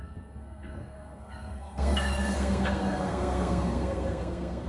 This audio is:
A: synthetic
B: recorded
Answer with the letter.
A